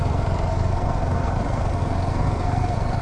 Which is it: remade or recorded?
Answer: remade